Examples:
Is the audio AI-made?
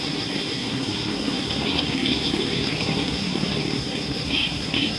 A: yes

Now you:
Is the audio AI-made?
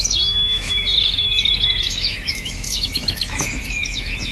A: yes